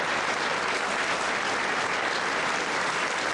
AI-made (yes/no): no